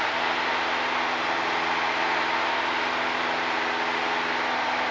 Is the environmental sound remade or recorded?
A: recorded